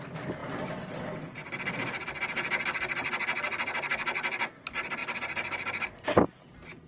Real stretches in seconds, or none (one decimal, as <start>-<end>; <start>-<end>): 0.0-6.9